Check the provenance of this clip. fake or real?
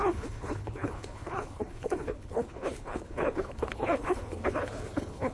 fake